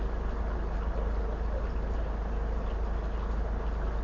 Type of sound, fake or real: real